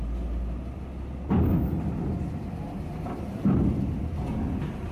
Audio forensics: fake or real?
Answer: real